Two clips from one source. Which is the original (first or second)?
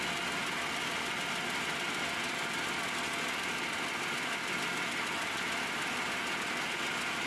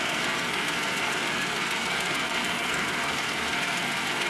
first